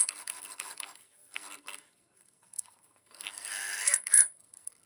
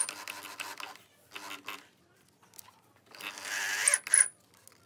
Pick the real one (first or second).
second